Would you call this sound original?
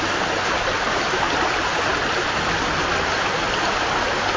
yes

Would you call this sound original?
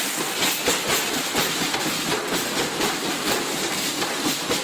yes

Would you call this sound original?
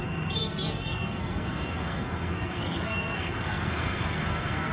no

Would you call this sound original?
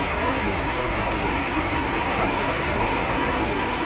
no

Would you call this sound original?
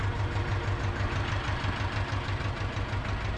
yes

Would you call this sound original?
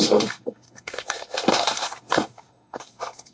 no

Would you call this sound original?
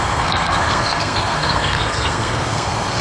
no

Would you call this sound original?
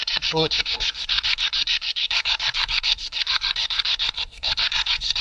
no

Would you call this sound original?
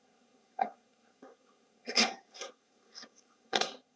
no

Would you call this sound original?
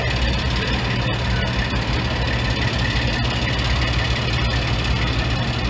yes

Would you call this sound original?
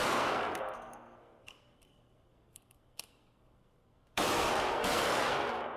no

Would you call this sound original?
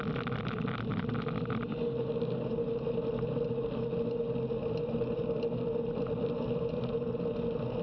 yes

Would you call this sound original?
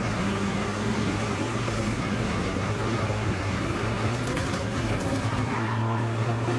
no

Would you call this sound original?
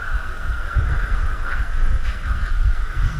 no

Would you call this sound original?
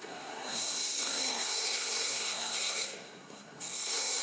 no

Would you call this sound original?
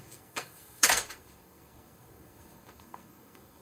no